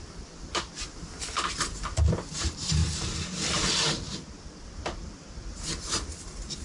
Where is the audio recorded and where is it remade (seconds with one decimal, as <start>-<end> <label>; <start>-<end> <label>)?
0.0-6.6 recorded